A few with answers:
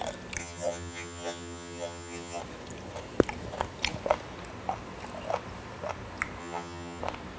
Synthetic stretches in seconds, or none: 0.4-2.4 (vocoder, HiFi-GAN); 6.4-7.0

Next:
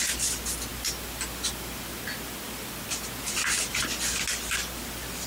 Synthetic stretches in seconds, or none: none

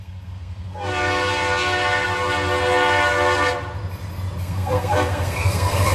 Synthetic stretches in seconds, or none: 0.0-0.9 (codec, SNAC); 4.4-5.9

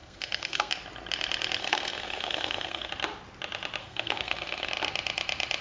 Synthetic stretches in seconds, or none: 0.0-0.7 (codec, SNAC); 1.6-2.9; 3.8-4.7

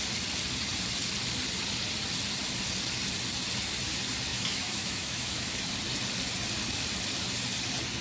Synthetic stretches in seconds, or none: 4.3-5.7 (autoencoder, DAC-VAE)

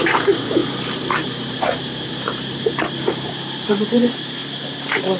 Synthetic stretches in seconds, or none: 0.0-4.4 (vocoder, BigVGAN v2)

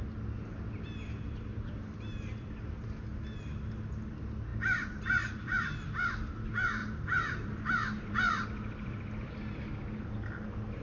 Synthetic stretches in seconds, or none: 1.5-2.6 (vocoder, BigVGAN v2); 4.5-6.1; 6.8-10.0